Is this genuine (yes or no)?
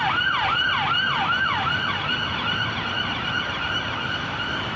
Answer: yes